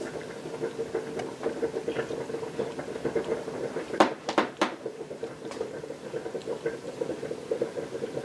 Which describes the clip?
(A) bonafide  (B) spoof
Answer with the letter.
B